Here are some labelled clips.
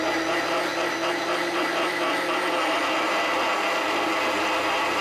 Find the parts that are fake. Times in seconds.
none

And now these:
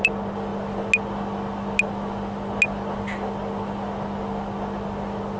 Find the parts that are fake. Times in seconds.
none

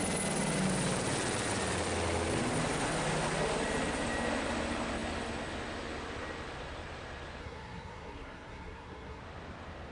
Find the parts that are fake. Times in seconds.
7.4-9.2 (codec, SNAC)

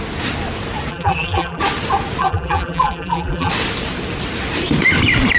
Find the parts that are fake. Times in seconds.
0.9-1.6 (vocoder, BigVGAN v2); 2.2-3.5